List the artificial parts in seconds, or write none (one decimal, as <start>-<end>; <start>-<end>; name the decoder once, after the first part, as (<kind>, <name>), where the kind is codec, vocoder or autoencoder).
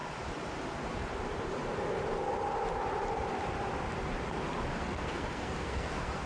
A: 4.7-6.3 (codec, SNAC)